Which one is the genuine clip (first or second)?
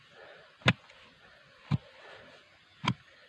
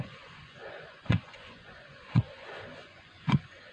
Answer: first